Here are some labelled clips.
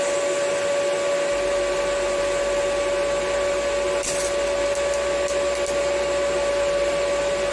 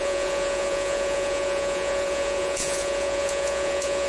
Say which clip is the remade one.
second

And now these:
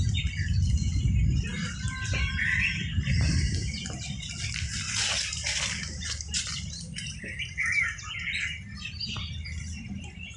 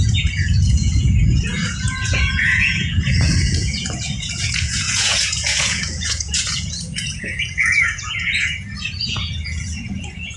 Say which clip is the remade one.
second